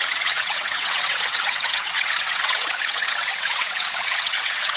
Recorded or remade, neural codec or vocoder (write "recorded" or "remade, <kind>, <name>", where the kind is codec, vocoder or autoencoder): remade, vocoder, WaveNeXt